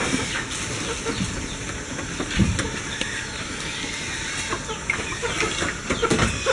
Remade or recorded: recorded